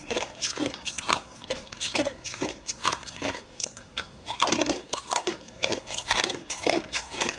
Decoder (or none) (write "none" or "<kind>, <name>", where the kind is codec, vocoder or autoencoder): codec, SNAC